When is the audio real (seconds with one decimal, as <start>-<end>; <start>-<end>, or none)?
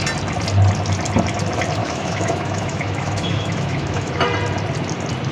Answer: 0.0-1.8; 4.2-5.3